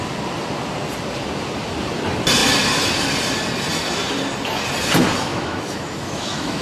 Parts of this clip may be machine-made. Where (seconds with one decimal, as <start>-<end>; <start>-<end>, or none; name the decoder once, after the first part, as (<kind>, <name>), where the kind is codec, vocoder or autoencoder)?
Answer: 5.3-6.6 (autoencoder, DAC-VAE)